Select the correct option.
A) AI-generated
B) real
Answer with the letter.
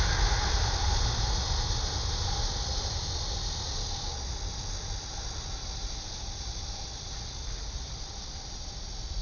B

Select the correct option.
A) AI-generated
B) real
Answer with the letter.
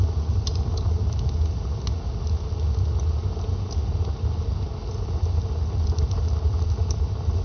B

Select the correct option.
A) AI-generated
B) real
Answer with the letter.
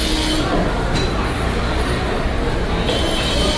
B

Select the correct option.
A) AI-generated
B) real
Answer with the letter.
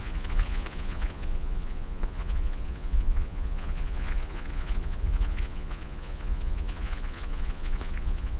A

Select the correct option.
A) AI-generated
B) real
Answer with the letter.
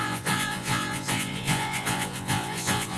A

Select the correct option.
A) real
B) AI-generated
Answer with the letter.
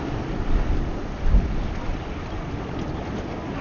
A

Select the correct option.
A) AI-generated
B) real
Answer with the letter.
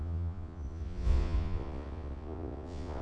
A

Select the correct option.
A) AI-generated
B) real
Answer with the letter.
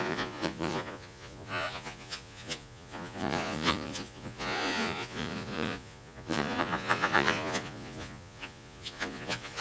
A